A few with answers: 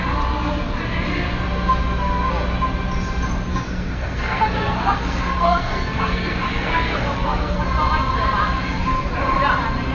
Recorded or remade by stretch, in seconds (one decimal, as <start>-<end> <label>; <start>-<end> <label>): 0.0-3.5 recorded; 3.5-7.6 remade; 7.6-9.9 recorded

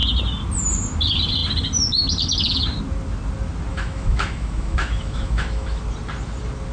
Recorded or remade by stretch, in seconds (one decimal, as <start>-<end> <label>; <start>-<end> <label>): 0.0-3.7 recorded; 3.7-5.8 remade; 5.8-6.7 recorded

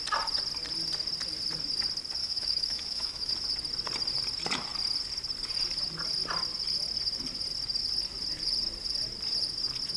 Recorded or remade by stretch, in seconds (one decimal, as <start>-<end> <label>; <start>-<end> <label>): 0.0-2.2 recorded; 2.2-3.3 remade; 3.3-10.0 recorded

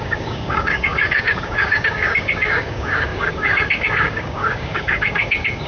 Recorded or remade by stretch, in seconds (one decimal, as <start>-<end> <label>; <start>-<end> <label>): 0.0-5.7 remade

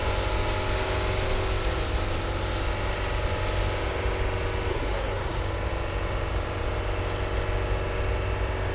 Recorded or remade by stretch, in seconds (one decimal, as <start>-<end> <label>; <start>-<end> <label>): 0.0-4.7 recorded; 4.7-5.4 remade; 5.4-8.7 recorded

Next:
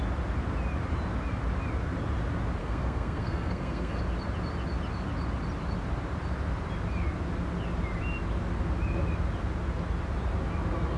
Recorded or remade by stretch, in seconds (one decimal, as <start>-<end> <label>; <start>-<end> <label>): 0.0-2.6 recorded; 2.6-4.0 remade; 4.0-11.0 recorded

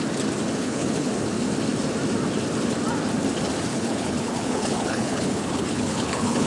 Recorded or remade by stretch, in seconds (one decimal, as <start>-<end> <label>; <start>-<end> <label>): 0.0-0.6 recorded; 0.6-1.1 remade; 1.1-3.7 recorded; 3.7-6.5 remade

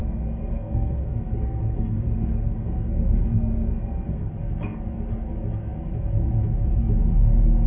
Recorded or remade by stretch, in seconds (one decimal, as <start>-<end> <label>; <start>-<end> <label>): 0.0-4.3 remade; 4.3-7.7 recorded